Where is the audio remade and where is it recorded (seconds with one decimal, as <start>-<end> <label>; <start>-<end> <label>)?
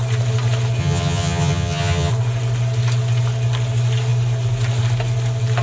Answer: 0.0-0.8 recorded; 0.8-2.1 remade; 2.1-5.6 recorded